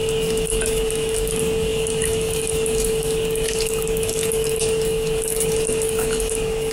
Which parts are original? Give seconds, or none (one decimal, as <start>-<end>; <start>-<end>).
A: none